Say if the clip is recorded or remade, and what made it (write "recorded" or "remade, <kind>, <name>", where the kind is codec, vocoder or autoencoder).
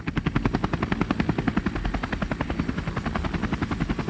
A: recorded